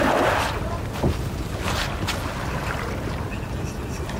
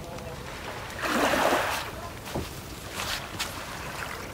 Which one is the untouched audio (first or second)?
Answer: first